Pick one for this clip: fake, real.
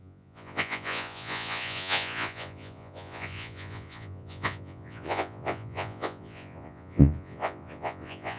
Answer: fake